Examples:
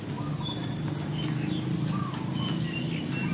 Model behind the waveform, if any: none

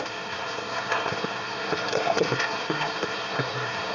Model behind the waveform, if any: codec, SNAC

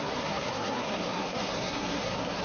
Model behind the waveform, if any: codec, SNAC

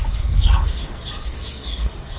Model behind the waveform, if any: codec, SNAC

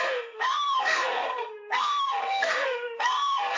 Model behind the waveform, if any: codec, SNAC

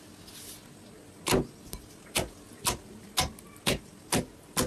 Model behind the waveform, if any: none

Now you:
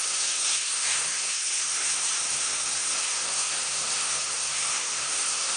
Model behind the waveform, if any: codec, SNAC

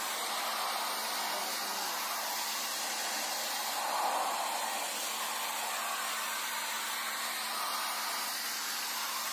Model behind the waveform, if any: none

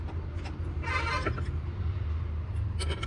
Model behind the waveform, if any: none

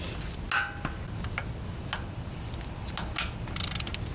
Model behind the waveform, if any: none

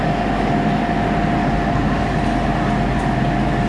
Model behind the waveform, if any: none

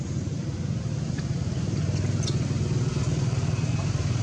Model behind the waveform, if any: none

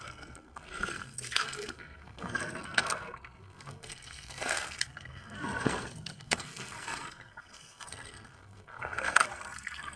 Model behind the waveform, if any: codec, SNAC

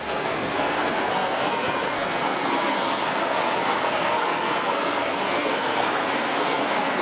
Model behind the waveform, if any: codec, SNAC